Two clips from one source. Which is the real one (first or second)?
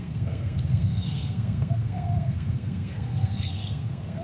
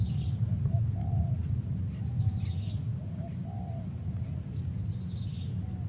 second